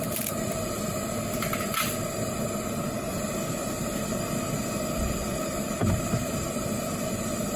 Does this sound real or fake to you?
fake